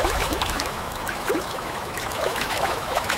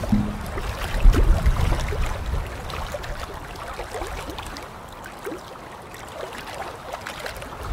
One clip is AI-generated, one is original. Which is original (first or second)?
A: second